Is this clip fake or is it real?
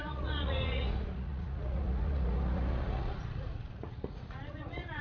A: fake